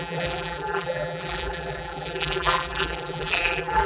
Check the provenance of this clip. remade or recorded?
remade